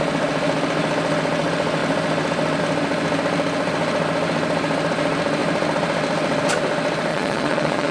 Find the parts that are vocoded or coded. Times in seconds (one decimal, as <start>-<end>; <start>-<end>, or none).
7.1-7.9